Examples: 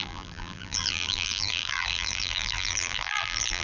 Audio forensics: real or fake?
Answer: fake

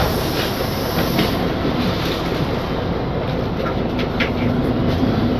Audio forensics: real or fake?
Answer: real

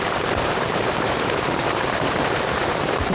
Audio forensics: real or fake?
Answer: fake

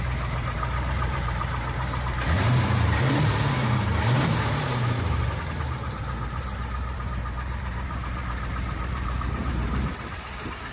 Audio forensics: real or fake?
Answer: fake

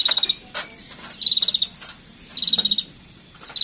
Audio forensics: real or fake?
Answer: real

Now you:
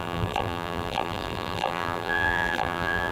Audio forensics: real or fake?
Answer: fake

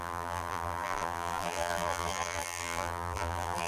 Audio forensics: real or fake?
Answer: fake